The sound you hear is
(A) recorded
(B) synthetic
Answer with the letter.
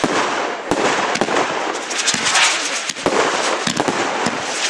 A